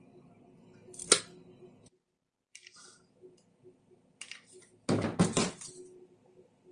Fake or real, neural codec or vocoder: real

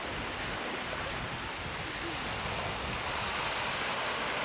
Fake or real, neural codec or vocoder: real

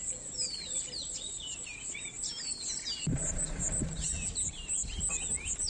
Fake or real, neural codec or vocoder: real